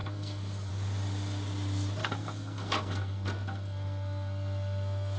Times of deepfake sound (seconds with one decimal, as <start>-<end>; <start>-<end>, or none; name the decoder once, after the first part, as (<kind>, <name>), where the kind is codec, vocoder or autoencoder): 0.0-0.7 (codec, SNAC); 2.0-5.2